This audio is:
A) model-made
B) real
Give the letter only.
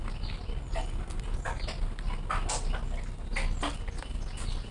B